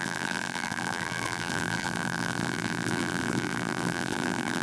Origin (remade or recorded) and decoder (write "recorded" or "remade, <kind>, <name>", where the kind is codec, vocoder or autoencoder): remade, vocoder, BigVGAN v2